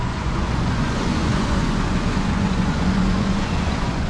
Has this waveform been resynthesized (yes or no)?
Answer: yes